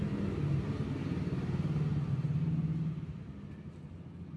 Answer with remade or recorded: recorded